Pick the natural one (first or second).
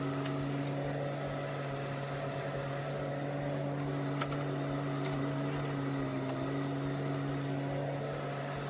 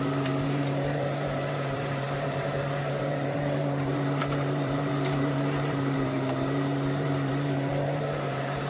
first